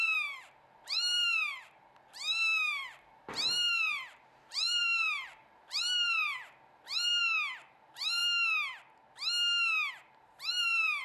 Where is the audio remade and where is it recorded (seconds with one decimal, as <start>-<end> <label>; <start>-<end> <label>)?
0.0-7.1 remade; 7.1-7.7 recorded; 7.7-8.2 remade; 8.2-9.9 recorded; 9.9-11.0 remade